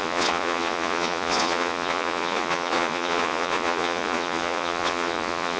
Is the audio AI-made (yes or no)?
yes